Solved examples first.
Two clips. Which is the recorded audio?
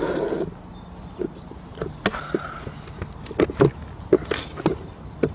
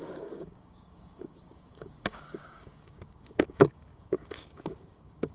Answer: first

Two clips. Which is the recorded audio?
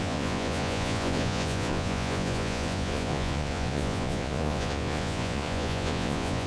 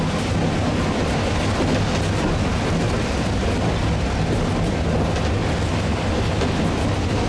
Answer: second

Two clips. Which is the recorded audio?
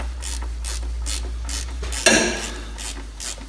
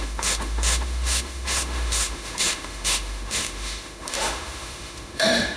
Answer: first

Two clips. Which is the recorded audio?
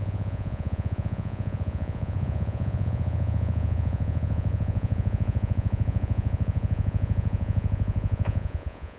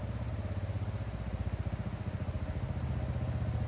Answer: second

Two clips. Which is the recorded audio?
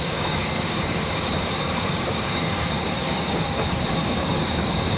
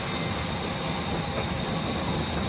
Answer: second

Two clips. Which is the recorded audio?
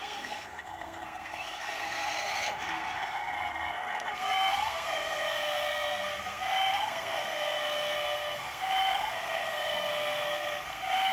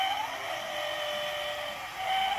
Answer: second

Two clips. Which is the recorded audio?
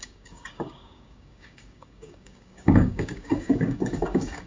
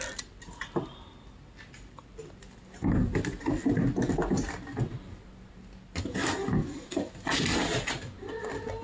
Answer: second